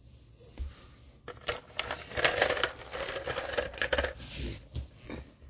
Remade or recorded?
recorded